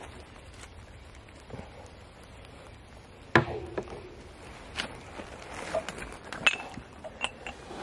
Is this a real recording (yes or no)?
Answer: yes